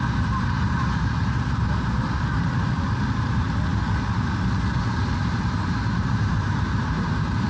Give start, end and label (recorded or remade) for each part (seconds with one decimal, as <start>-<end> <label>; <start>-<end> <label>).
0.0-3.7 remade; 3.7-4.8 recorded; 4.8-7.5 remade